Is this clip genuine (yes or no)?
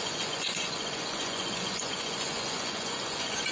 no